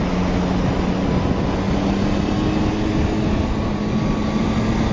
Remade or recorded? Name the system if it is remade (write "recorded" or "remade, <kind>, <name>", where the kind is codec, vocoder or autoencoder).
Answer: recorded